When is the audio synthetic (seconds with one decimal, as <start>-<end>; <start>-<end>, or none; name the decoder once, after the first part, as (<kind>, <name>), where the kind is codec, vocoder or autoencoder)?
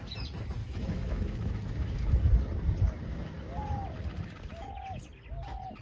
0.6-2.1 (autoencoder, DAC-VAE)